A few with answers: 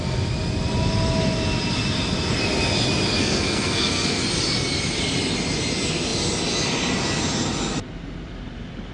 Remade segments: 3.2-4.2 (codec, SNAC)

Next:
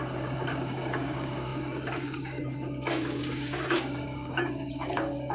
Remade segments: 0.0-5.3 (codec, DAC)

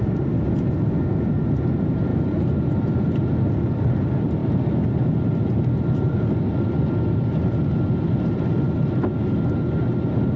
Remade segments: none

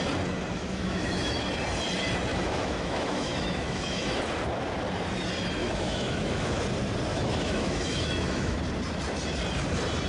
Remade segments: 0.5-1.4 (autoencoder, DAC-VAE); 2.3-4.2; 5.6-6.6; 7.1-8.6

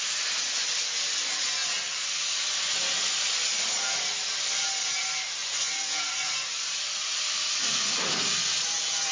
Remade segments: 5.4-6.4 (vocoder, Vocos)

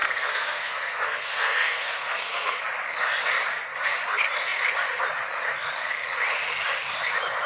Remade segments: 0.0-2.6 (codec, SNAC)

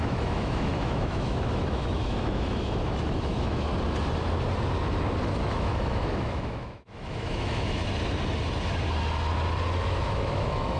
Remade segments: 0.0-3.7 (autoencoder, DAC-VAE); 5.4-7.8; 9.9-10.8

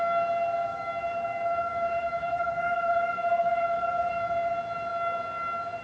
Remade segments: 0.6-4.1 (autoencoder, DAC-VAE)